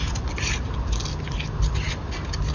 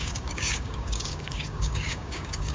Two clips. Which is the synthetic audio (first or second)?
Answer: second